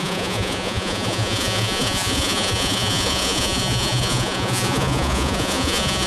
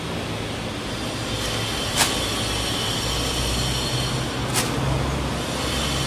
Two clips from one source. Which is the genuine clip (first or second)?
second